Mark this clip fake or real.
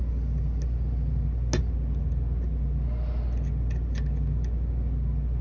real